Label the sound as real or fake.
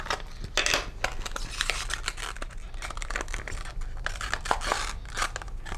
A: real